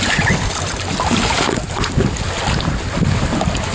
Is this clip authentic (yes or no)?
yes